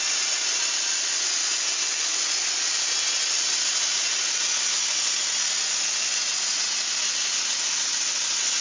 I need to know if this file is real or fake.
real